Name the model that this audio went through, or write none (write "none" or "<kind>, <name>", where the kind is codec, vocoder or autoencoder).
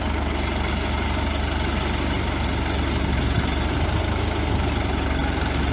none